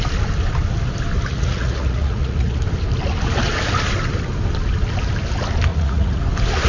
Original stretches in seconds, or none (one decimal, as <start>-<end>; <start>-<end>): 0.0-1.3; 2.6-5.7; 6.2-6.7